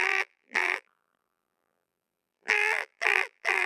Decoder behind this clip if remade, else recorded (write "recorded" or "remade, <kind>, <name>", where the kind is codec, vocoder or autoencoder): remade, vocoder, BigVGAN v2